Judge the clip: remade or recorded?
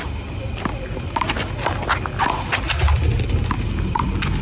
recorded